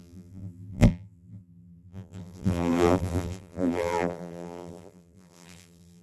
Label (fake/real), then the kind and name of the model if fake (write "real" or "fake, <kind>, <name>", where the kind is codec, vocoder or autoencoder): fake, vocoder, BigVGAN v2